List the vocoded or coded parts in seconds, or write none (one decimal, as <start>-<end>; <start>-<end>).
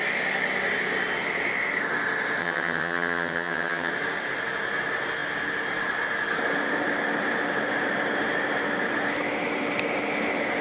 2.4-3.9